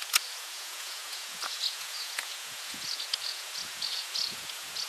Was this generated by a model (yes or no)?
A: yes